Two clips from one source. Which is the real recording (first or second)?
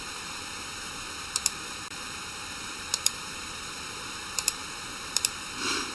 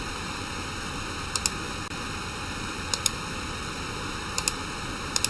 second